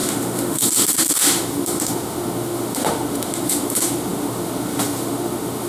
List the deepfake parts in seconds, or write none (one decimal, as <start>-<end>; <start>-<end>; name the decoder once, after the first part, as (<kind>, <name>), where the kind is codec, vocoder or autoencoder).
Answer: 0.0-5.7 (autoencoder, DAC-VAE)